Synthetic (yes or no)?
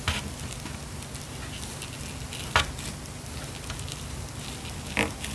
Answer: no